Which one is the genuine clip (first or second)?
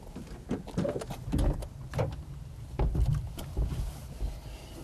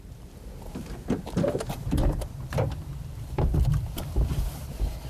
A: first